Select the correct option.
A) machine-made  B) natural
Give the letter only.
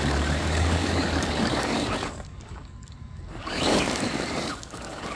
A